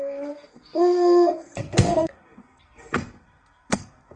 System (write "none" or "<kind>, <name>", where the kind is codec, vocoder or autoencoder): codec, SNAC